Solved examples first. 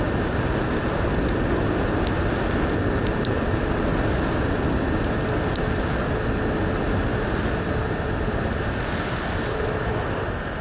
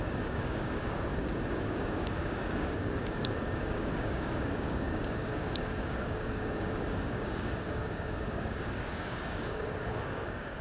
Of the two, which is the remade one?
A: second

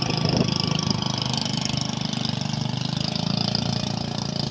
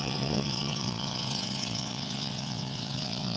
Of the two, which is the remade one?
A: second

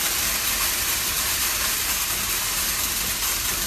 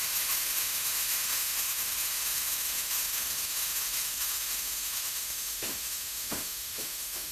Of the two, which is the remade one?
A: second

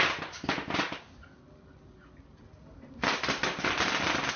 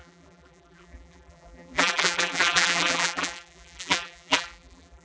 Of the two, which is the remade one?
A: second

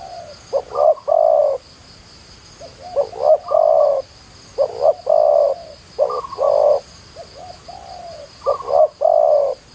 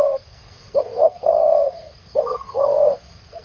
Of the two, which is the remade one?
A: second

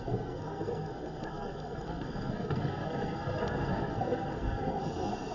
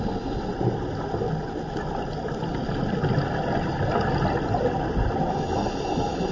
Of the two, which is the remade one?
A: first